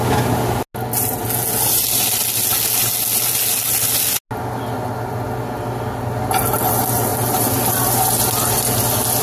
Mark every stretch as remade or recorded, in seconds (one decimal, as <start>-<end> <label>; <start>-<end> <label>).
0.0-9.2 recorded